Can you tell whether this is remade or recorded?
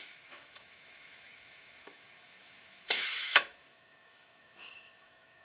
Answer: remade